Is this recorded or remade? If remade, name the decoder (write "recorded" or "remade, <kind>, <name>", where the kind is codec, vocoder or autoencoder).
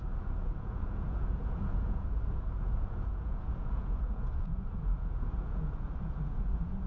remade, vocoder, Vocos